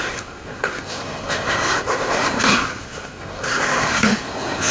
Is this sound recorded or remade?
remade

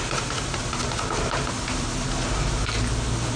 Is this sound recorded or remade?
recorded